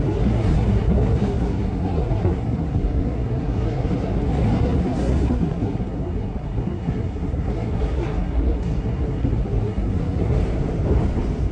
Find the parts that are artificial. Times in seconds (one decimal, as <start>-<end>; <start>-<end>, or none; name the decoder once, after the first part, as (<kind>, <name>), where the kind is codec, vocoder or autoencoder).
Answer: 0.0-10.4 (codec, SNAC)